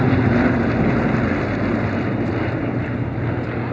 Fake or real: real